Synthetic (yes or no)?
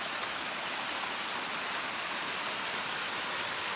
no